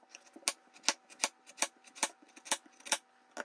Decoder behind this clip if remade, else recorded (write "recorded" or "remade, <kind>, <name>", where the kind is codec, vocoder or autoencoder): recorded